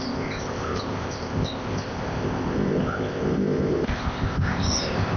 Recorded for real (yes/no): no